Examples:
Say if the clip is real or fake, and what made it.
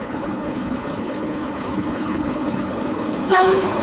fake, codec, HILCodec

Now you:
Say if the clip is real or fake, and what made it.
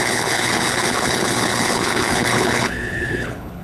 fake, codec, HILCodec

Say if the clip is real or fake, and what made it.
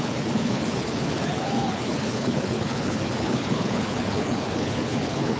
fake, codec, HILCodec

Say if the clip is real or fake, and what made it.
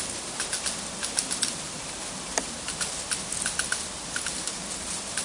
real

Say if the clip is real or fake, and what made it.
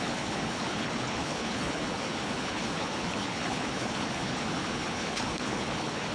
fake, codec, HILCodec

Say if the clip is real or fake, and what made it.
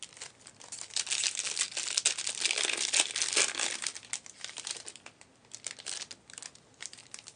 real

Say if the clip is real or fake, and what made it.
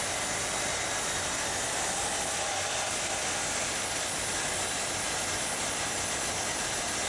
real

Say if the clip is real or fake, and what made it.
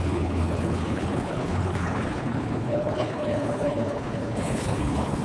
fake, codec, HILCodec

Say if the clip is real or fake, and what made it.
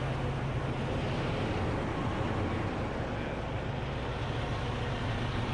real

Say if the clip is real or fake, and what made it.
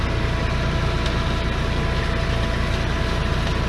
real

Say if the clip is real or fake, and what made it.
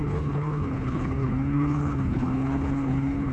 fake, codec, HILCodec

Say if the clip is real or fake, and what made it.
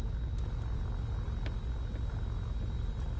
real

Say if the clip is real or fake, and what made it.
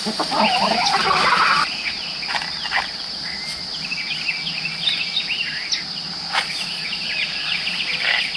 real